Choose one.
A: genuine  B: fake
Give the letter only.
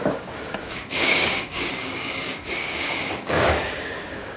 B